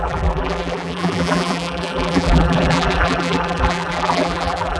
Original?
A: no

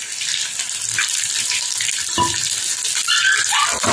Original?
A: yes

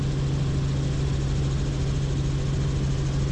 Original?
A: yes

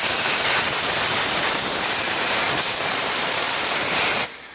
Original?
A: no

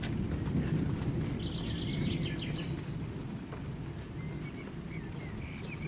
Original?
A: yes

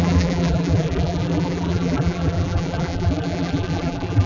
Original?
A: no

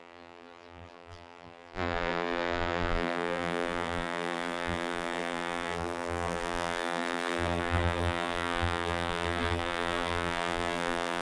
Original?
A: no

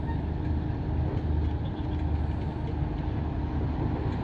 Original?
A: yes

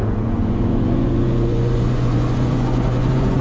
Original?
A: no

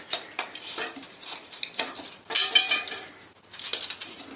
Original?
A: yes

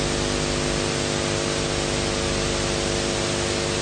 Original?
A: yes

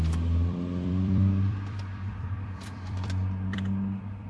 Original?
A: no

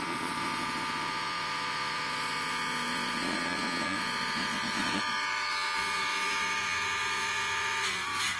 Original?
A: no